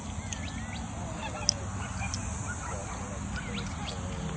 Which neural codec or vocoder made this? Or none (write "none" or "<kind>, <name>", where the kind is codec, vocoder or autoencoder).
none